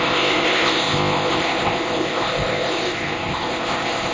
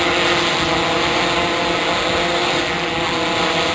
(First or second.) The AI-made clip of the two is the first